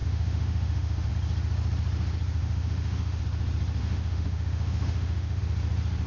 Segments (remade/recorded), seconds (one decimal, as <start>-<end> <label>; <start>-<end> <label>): 0.0-1.1 remade; 1.1-2.4 recorded; 2.4-3.2 remade; 3.2-3.8 recorded; 3.8-5.4 remade; 5.4-6.1 recorded